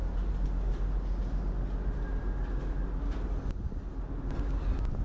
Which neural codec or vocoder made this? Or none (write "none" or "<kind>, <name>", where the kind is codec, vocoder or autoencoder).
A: none